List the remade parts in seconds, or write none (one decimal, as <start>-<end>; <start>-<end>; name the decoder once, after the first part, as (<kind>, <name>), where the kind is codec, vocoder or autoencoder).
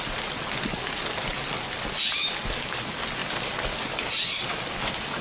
none